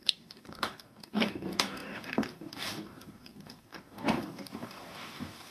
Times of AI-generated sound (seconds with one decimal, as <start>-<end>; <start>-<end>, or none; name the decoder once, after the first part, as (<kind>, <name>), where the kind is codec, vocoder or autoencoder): 0.0-5.5 (codec, DAC)